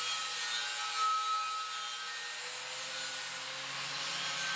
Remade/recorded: recorded